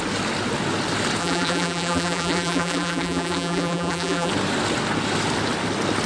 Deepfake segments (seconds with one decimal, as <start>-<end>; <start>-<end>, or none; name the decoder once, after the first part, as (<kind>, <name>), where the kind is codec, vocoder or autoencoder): 1.2-4.3 (vocoder, BigVGAN v2)